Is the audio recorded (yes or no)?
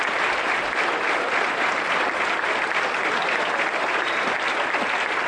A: no